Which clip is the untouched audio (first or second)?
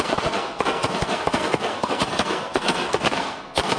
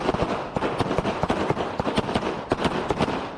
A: second